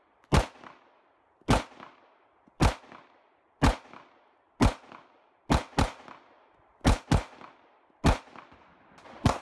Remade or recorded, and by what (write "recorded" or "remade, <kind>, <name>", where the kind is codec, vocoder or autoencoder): recorded